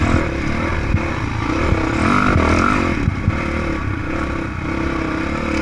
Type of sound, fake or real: real